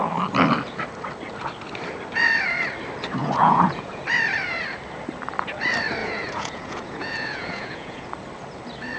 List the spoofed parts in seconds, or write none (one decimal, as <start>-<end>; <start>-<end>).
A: 3.2-4.0; 6.0-8.1